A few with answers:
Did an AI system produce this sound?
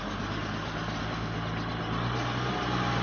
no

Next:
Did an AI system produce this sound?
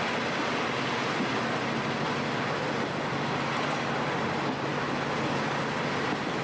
no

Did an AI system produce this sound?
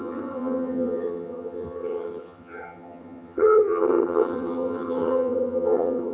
yes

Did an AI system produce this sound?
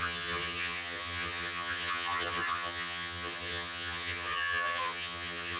yes